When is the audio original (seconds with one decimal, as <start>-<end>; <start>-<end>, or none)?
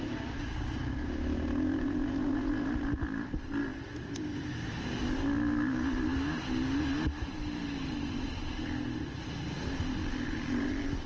0.0-11.1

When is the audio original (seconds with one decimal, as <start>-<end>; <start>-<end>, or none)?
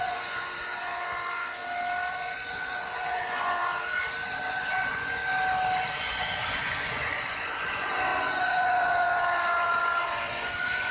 1.6-2.1; 3.7-4.5; 5.2-6.0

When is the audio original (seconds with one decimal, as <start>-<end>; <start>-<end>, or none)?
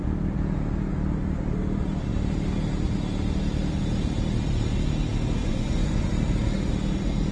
0.0-5.4; 6.1-7.3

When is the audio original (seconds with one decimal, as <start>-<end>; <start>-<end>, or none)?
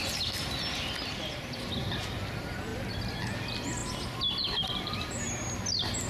0.0-6.1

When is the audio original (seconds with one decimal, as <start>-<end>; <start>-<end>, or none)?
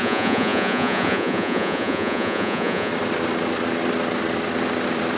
2.9-5.2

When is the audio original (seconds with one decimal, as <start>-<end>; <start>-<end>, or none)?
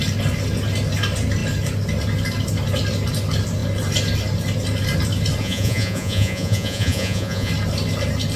0.0-5.4; 7.5-8.4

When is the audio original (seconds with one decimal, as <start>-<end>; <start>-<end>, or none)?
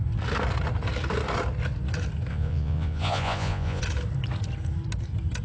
0.0-2.3; 3.8-5.4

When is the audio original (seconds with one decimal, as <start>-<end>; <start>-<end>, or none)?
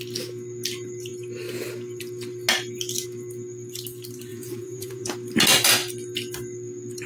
0.0-4.3; 5.1-7.1